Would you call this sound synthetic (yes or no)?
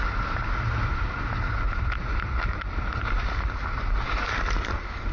no